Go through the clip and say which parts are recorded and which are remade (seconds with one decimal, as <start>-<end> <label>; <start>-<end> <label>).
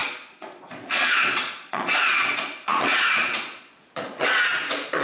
0.0-5.0 remade